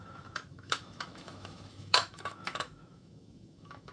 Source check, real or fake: fake